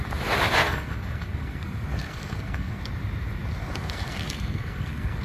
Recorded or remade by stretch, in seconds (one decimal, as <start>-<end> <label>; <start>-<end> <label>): 0.0-0.6 recorded; 0.6-2.8 remade; 2.8-3.6 recorded; 3.6-5.2 remade